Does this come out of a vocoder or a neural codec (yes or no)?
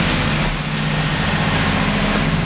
no